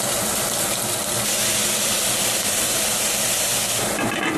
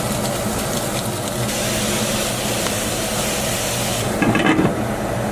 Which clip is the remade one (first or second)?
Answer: first